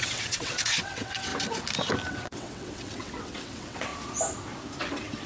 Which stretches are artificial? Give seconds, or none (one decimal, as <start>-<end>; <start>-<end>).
0.0-1.3; 2.1-3.9; 4.8-5.3